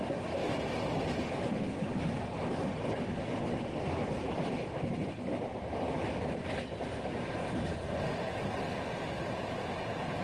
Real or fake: real